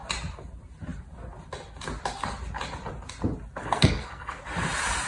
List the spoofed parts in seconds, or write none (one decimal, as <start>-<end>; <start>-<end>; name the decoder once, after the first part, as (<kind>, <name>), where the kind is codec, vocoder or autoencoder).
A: 3.6-4.4 (codec, SNAC)